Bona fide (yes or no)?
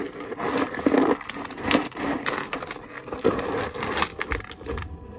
yes